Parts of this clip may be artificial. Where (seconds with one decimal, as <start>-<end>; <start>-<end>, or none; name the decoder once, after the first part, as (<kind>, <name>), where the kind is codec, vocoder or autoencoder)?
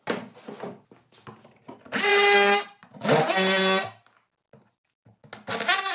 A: none